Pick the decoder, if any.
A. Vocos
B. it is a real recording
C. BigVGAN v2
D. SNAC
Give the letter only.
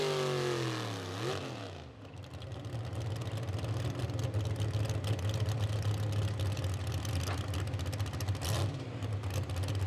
B